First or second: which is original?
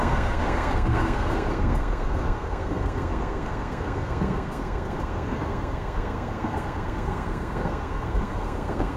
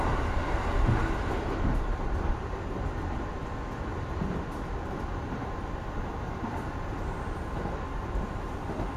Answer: second